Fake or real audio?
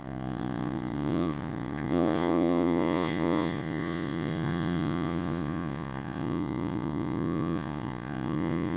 fake